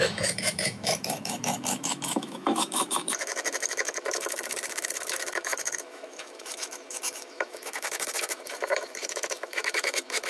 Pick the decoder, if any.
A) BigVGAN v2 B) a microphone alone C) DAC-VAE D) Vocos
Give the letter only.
C